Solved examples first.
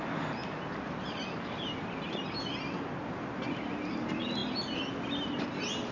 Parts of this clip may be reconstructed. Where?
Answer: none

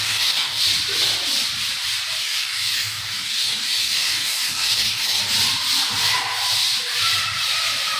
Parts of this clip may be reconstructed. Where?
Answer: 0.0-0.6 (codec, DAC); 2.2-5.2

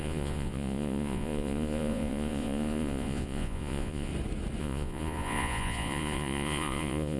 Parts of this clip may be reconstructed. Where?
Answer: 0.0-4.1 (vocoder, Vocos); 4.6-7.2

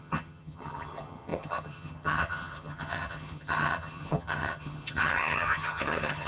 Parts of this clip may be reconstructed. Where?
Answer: 0.0-6.3 (vocoder, HiFi-GAN)